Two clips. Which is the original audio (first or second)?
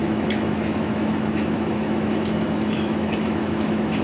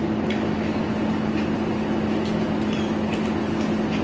second